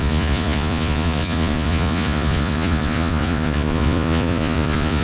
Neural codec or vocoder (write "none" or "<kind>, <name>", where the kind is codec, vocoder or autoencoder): vocoder, Vocos